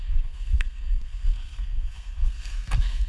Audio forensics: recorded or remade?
remade